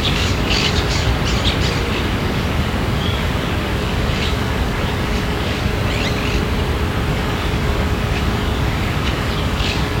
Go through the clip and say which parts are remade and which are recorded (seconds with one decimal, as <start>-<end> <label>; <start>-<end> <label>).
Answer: 0.0-1.1 remade; 1.1-2.1 recorded; 2.1-5.7 remade; 5.7-7.1 recorded; 7.1-10.0 remade